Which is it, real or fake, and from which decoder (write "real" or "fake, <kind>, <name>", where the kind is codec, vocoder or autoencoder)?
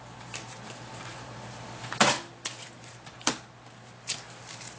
real